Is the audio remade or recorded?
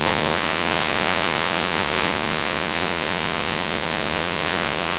remade